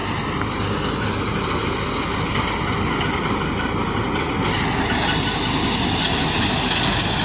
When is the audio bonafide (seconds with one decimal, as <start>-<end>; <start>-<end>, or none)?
0.0-7.2